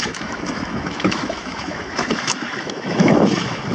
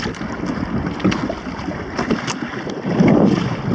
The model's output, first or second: first